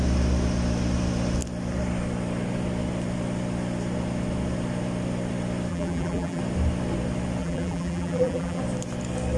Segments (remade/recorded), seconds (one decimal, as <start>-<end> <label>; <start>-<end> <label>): 0.0-5.7 recorded; 5.7-6.4 remade; 6.4-7.4 recorded; 7.4-8.6 remade; 8.6-9.4 recorded